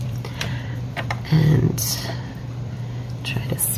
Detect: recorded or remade remade